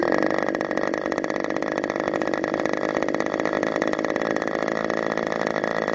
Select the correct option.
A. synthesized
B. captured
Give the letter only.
B